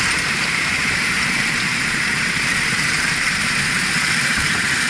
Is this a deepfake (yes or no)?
yes